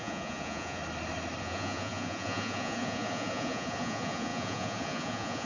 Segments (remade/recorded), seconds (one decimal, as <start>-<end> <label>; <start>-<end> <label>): 0.0-0.8 remade; 0.8-1.4 recorded; 1.4-5.5 remade